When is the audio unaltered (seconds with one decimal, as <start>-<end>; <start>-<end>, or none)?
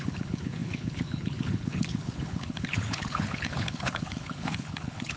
none